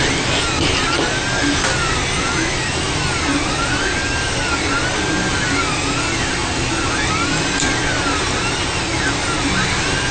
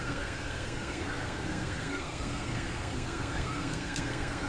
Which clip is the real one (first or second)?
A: first